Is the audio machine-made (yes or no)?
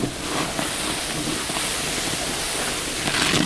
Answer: no